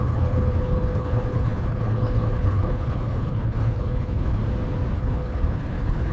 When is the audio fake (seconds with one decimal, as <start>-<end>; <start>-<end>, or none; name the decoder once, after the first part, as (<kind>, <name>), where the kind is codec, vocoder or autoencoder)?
0.0-4.4 (codec, HILCodec); 5.0-6.1